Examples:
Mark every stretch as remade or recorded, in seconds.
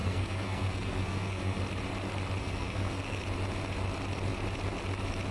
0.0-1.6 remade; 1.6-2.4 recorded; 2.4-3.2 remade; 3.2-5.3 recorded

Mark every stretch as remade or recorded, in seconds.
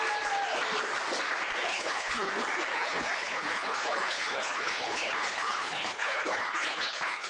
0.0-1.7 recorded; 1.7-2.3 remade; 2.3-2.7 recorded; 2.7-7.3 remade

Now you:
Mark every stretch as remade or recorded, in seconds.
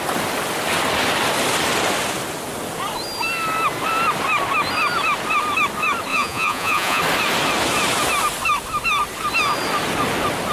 0.0-6.1 recorded; 6.1-7.0 remade; 7.0-10.5 recorded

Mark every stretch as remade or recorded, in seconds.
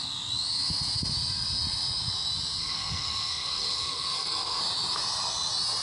0.0-2.6 recorded; 2.6-4.6 remade; 4.6-5.8 recorded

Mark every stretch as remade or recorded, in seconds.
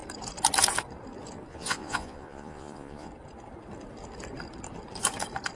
0.0-1.5 recorded; 1.5-3.1 remade; 3.1-5.6 recorded